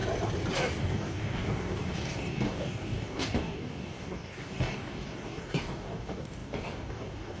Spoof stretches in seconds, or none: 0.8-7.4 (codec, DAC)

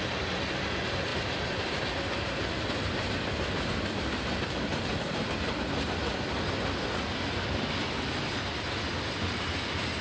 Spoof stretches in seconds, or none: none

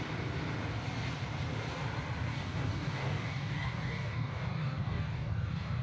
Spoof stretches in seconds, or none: 2.3-5.8 (codec, DAC)

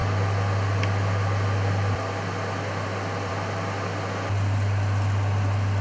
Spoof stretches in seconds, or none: none

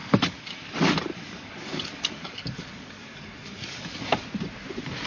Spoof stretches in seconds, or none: 0.0-0.6 (codec, DAC); 1.1-4.2

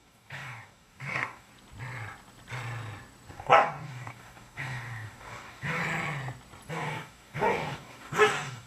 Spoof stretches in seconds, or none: 0.0-1.5 (codec, DAC); 3.3-5.8; 6.7-8.7

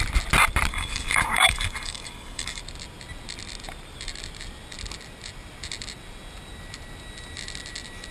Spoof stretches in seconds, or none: 0.7-2.6 (codec, DAC)

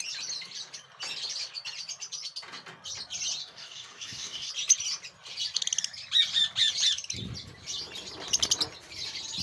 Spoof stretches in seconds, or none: 3.4-4.5 (codec, DAC)